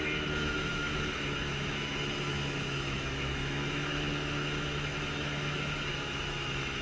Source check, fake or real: fake